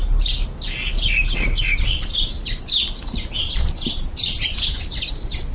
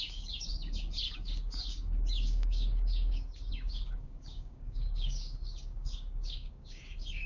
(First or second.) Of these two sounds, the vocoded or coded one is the second